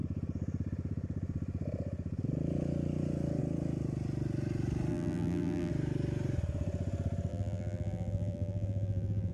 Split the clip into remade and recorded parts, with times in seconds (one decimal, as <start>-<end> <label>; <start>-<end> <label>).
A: 0.0-4.9 recorded; 4.9-5.7 remade; 5.7-7.3 recorded; 7.3-9.3 remade